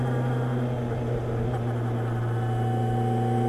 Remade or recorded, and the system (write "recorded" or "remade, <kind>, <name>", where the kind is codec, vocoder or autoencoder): recorded